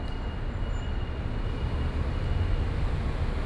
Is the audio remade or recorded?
recorded